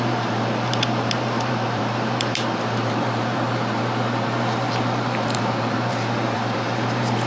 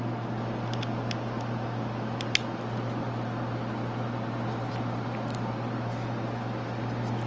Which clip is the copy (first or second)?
first